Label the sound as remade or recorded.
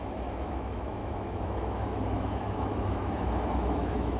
remade